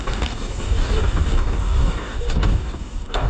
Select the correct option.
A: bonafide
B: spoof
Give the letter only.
B